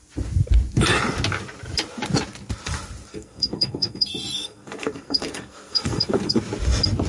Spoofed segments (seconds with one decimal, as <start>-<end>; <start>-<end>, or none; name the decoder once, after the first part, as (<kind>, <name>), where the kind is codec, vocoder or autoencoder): 3.1-6.4 (codec, SNAC)